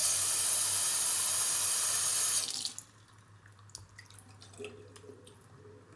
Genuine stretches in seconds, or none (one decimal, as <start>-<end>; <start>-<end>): 0.0-1.7; 2.1-6.0